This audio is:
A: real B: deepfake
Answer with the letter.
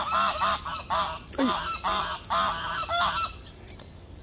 A